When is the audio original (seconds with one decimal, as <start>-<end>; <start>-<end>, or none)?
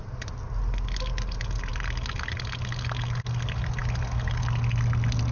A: 0.0-5.3